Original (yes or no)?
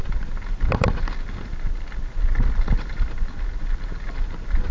yes